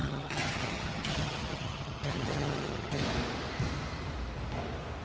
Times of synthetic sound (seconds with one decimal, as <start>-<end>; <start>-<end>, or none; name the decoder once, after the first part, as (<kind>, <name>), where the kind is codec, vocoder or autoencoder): 0.0-3.0 (vocoder, HiFi-GAN)